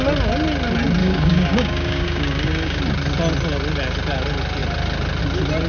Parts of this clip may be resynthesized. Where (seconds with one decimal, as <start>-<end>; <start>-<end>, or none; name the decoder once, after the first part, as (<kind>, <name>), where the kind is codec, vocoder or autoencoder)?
1.0-2.8 (codec, DAC)